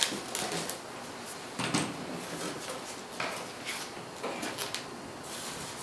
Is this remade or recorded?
recorded